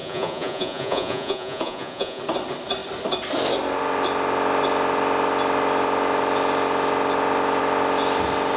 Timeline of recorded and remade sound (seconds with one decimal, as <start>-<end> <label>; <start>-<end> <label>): 0.0-2.2 remade; 2.2-8.6 recorded